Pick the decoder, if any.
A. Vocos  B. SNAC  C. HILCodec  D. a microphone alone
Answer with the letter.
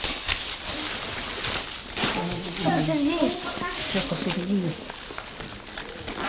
D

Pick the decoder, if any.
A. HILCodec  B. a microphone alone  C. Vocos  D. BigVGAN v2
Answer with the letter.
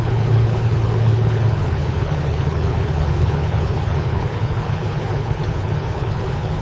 A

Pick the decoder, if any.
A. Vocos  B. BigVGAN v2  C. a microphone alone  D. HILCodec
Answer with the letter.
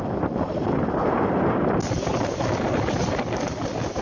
C